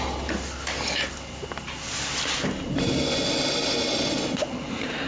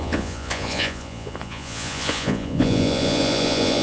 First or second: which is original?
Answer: first